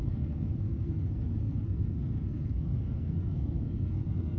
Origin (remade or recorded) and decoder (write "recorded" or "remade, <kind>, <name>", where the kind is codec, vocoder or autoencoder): remade, codec, SNAC